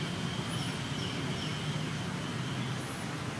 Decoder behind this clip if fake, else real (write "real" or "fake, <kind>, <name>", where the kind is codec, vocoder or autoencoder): real